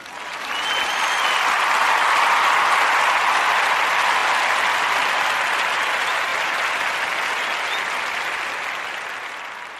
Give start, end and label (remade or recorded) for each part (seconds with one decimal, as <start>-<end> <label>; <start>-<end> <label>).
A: 0.0-9.8 recorded